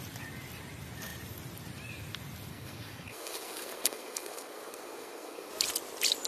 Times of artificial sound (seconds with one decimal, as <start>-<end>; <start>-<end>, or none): 2.5-5.5